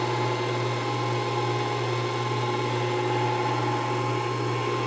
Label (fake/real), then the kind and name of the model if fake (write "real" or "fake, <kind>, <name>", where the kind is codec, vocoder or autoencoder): real